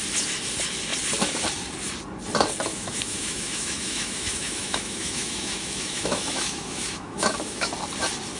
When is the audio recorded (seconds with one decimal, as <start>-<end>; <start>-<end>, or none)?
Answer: 0.0-2.7; 7.7-8.4